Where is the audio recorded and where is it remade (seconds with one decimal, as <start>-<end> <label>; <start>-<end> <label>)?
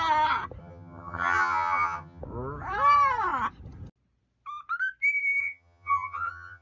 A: 0.0-0.6 recorded; 0.6-2.2 remade; 2.2-5.4 recorded; 5.4-6.6 remade